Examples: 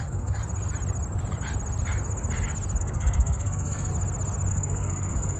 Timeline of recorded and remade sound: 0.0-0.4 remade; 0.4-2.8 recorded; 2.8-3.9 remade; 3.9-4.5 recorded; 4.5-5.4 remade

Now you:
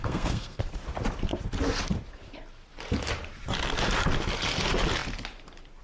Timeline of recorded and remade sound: 0.0-0.6 remade; 0.6-5.8 recorded

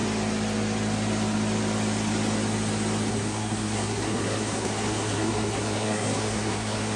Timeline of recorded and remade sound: 0.0-3.1 recorded; 3.1-7.0 remade

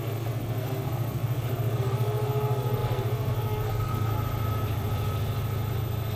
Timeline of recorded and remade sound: 0.0-4.1 remade; 4.1-6.2 recorded

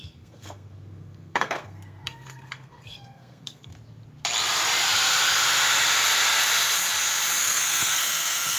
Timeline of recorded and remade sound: 0.0-3.7 remade; 3.7-7.4 recorded; 7.4-8.6 remade

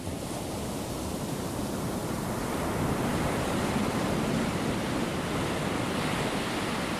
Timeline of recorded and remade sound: 0.0-7.0 recorded

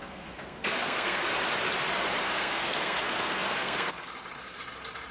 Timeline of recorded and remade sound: 0.0-1.3 remade; 1.3-2.2 recorded; 2.2-4.1 remade; 4.1-5.1 recorded

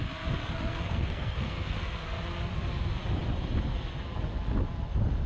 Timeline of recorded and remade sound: 0.0-0.4 recorded; 0.4-1.8 remade; 1.8-5.3 recorded